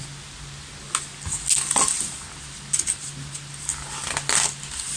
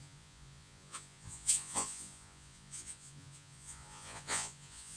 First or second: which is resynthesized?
second